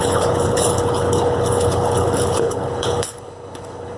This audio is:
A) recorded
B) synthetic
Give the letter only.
B